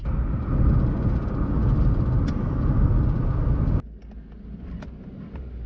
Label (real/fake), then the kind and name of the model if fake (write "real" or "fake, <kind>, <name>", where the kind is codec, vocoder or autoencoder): real